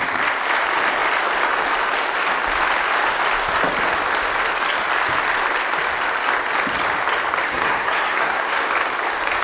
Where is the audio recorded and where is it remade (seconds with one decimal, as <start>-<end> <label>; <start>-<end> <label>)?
0.0-7.5 recorded; 7.5-8.6 remade; 8.6-9.4 recorded